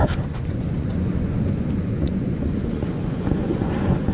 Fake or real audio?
fake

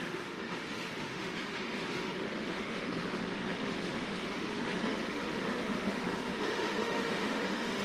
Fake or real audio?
fake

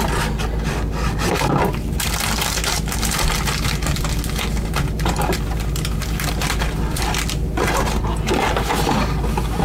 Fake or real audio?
fake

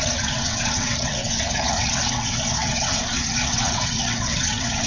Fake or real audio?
fake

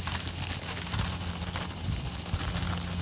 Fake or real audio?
real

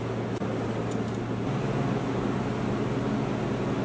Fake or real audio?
real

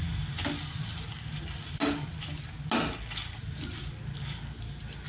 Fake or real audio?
real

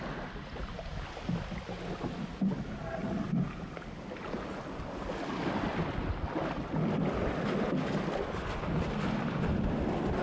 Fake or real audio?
real